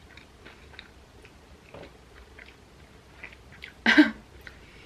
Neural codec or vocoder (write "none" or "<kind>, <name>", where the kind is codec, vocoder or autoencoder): none